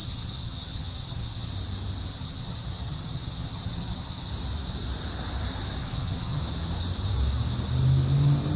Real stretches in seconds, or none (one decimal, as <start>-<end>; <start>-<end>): 1.5-2.1; 4.3-5.8; 6.4-8.6

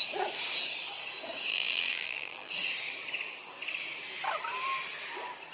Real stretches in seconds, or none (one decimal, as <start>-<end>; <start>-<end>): 0.0-1.5; 2.5-5.5

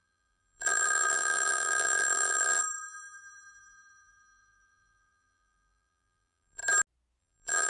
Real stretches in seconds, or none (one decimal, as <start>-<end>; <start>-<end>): 6.6-7.2

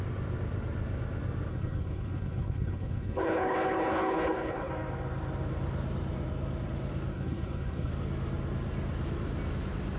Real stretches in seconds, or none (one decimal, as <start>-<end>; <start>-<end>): 0.0-1.5; 4.7-7.1; 7.9-10.0

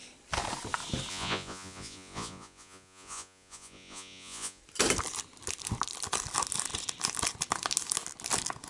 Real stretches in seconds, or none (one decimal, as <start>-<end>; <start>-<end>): 0.0-1.1; 4.6-8.7